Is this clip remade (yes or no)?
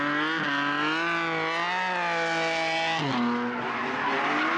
no